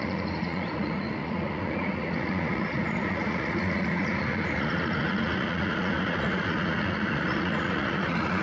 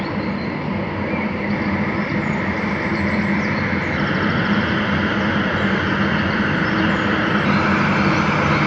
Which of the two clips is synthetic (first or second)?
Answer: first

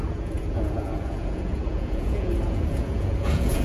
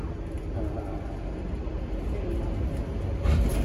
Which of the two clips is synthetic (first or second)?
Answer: first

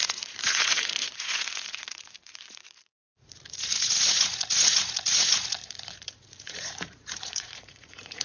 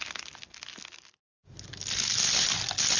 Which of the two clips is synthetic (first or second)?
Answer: first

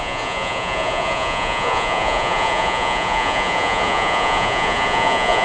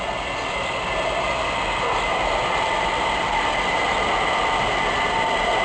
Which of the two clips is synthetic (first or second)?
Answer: first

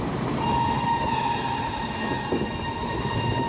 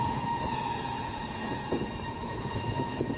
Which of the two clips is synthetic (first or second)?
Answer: second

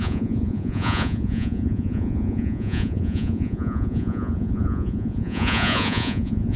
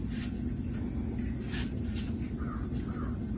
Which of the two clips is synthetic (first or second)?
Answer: first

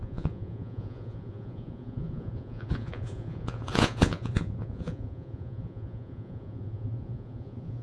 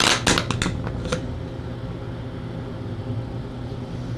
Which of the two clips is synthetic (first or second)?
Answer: first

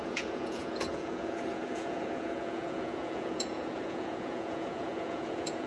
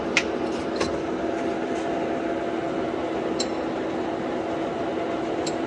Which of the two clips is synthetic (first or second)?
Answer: first